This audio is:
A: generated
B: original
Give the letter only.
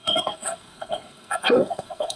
A